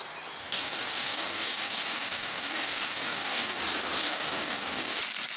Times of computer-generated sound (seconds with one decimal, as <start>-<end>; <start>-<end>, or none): 0.4-3.6; 4.0-5.0